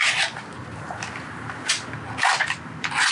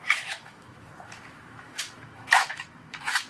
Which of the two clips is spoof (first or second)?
second